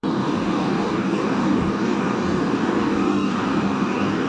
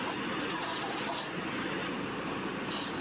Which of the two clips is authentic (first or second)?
second